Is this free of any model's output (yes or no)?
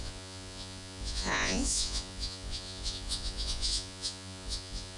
no